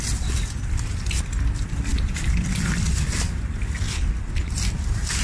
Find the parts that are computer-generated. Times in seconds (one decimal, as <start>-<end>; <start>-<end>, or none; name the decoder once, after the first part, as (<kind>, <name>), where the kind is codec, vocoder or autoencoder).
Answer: none